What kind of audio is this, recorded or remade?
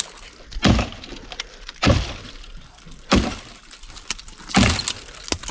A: recorded